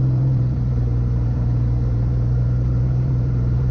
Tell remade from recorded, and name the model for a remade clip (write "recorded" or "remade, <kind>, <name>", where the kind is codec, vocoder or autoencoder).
remade, vocoder, BigVGAN v2